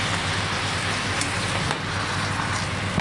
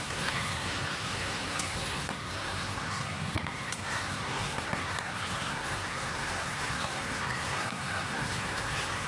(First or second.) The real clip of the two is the first